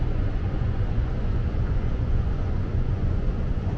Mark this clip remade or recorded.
remade